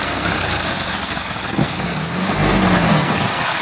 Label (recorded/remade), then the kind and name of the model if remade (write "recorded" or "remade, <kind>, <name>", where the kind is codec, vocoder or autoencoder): remade, codec, SNAC